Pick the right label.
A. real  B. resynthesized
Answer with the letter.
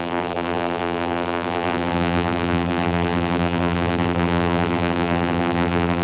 B